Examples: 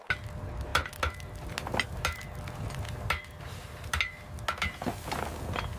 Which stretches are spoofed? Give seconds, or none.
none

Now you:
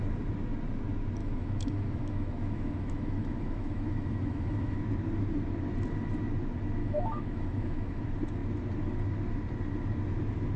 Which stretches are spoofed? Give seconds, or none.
1.2-4.8 (autoencoder, DAC-VAE); 6.8-8.0

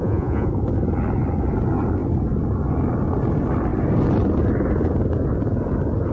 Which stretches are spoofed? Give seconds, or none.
0.0-0.5 (vocoder, Vocos)

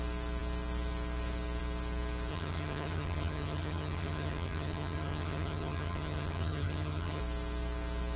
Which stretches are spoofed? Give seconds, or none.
2.3-7.2 (vocoder, HiFi-GAN)